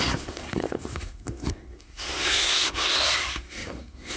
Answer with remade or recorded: remade